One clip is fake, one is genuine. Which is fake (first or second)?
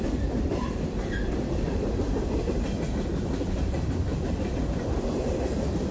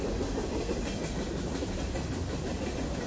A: first